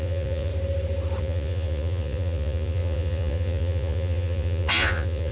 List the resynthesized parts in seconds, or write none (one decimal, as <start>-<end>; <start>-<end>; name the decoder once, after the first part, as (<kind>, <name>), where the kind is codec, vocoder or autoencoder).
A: 0.0-0.5 (vocoder, Vocos); 1.2-5.3